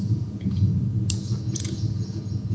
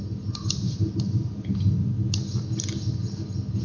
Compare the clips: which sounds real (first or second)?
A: second